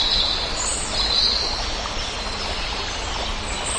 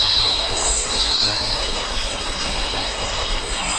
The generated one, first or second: second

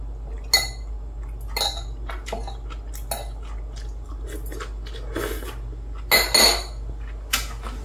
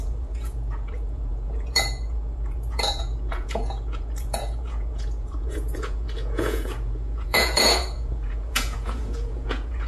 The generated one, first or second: second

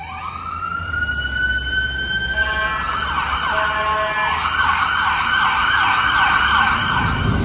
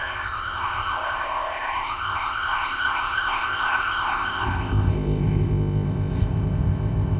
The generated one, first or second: second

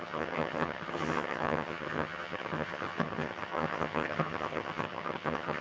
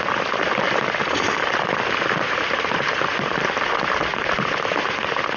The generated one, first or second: first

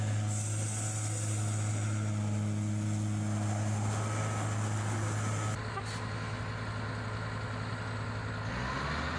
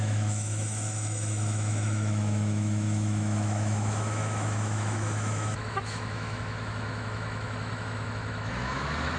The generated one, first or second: second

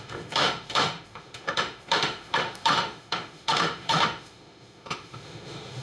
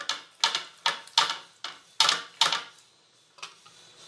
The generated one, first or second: first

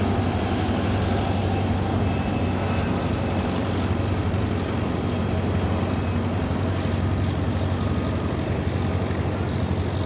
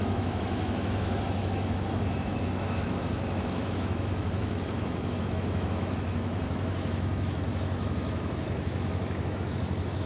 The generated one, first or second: second